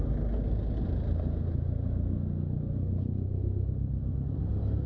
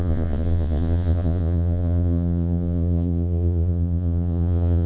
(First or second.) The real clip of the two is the first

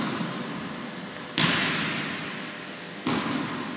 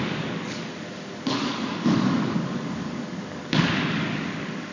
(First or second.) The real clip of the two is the first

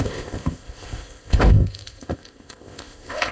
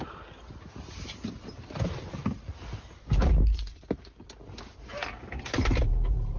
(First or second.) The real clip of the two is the second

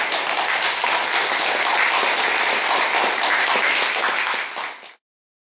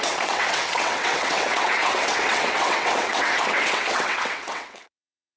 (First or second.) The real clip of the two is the first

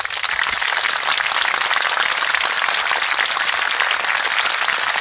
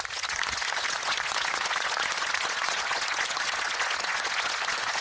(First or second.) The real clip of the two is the first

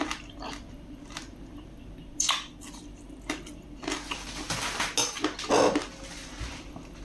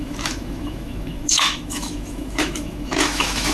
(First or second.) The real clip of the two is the first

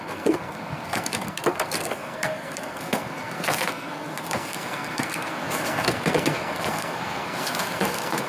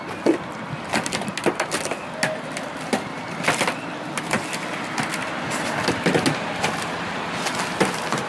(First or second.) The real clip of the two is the second